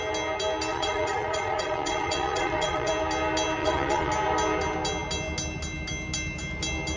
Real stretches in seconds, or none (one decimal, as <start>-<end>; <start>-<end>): 0.0-0.7; 2.9-3.6; 4.1-7.0